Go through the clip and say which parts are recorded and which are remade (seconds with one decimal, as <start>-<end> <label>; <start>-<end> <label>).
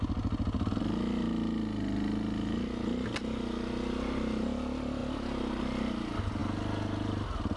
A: 0.0-7.6 recorded